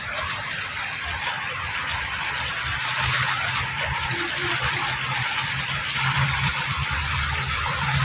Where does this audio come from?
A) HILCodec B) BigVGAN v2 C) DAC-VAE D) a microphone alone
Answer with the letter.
B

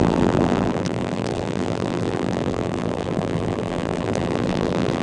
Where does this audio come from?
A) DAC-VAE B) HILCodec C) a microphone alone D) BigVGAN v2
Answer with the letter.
D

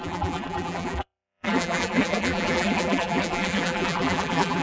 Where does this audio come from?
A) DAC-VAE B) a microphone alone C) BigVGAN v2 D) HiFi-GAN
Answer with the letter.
C